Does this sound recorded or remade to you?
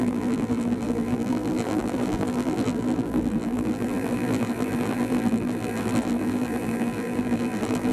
remade